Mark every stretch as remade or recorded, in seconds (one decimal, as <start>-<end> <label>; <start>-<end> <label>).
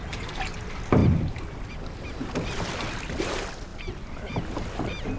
0.0-5.2 recorded